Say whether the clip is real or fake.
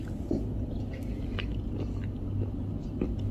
real